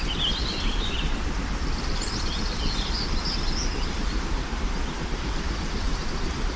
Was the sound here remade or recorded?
recorded